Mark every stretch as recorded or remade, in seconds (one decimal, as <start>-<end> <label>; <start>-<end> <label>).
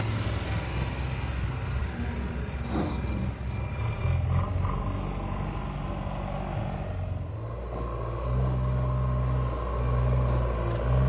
0.0-11.1 recorded